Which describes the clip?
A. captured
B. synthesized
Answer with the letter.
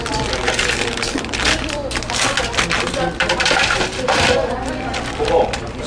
B